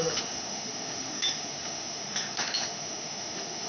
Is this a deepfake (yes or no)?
yes